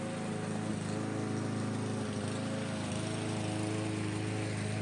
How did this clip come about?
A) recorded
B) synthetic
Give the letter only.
A